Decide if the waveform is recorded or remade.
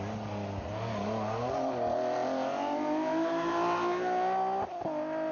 recorded